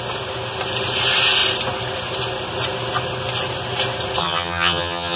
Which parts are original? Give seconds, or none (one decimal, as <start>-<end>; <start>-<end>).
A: 0.0-4.2